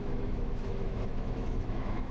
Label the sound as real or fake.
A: fake